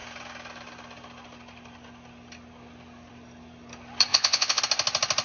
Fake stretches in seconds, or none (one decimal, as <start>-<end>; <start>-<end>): 4.1-4.6